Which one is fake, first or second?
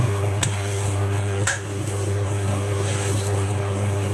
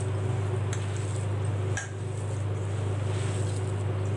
first